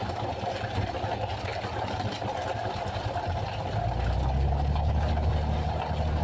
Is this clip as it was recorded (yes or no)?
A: yes